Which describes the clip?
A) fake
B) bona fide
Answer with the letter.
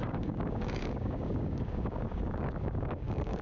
A